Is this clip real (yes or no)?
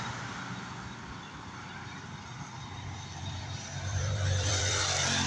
no